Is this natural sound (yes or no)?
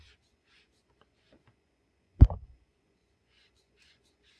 no